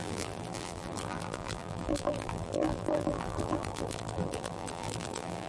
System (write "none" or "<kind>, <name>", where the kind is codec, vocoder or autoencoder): vocoder, BigVGAN v2